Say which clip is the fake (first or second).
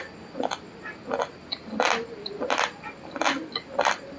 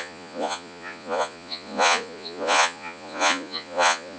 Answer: second